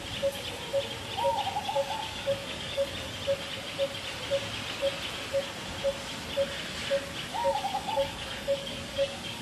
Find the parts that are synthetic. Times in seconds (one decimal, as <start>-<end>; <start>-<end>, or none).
1.6-2.9; 7.3-9.4

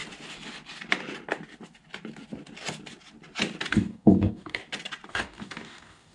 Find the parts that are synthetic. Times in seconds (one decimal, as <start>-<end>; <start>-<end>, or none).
3.7-4.6; 5.1-6.1